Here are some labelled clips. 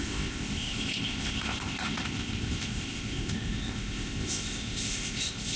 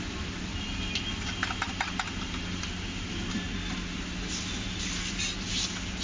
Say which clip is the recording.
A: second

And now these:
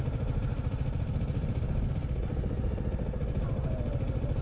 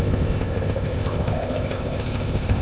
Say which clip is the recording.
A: first